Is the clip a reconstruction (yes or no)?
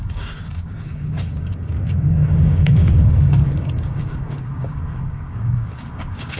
yes